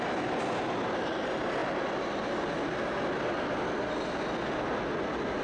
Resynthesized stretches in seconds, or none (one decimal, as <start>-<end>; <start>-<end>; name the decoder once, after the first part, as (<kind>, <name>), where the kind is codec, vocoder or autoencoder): none